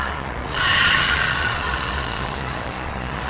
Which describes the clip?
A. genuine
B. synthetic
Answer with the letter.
B